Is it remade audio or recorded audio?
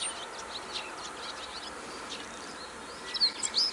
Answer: recorded